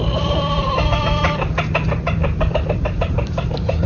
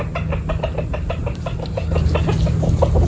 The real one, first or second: second